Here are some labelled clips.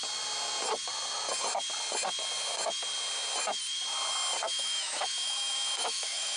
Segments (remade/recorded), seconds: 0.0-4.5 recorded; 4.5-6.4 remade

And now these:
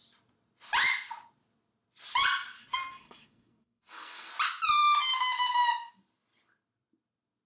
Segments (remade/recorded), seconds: 0.0-2.6 recorded; 2.6-4.3 remade; 4.3-7.5 recorded

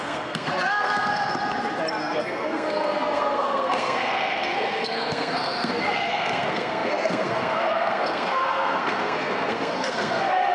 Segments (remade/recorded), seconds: 0.0-1.3 remade; 1.3-2.0 recorded; 2.0-10.5 remade

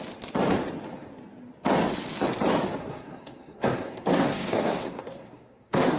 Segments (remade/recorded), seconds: 0.0-2.8 recorded; 2.8-6.0 remade